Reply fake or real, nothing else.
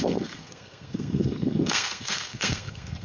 fake